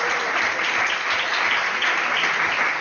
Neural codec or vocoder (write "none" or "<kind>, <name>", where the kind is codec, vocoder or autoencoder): none